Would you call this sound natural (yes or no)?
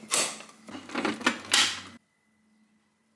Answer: yes